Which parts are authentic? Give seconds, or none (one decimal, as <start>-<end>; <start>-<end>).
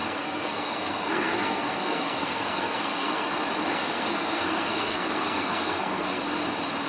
3.3-3.7; 6.2-6.9